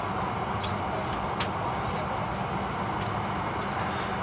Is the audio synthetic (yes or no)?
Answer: no